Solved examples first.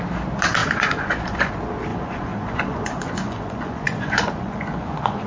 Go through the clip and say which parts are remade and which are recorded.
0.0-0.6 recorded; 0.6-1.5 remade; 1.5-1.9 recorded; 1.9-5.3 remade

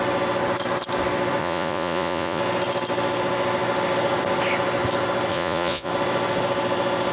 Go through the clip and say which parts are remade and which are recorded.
0.0-1.4 recorded; 1.4-2.4 remade; 2.4-5.3 recorded; 5.3-5.9 remade; 5.9-7.1 recorded

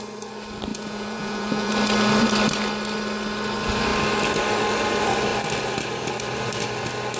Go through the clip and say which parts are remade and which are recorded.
0.0-0.7 recorded; 0.7-1.7 remade; 1.7-7.2 recorded

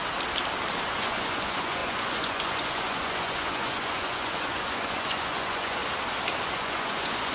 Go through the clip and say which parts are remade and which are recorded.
0.0-0.9 recorded; 0.9-5.8 remade; 5.8-6.5 recorded; 6.5-7.3 remade

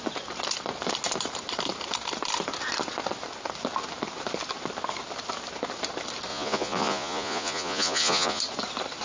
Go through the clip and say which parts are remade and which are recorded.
0.0-6.3 recorded; 6.3-8.4 remade; 8.4-9.0 recorded

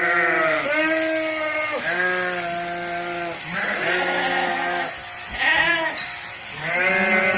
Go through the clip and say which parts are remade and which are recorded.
0.0-5.3 recorded; 5.3-6.0 remade; 6.0-7.4 recorded